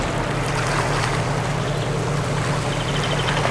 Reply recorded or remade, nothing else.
recorded